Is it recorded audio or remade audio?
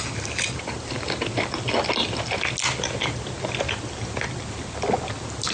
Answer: recorded